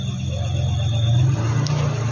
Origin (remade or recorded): recorded